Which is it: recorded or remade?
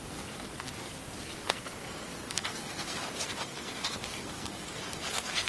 remade